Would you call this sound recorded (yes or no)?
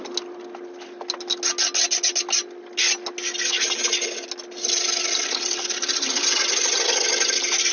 yes